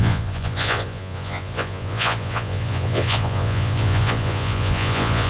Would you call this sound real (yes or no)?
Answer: no